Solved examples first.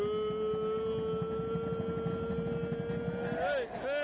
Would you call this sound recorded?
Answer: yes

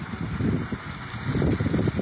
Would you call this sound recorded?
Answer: yes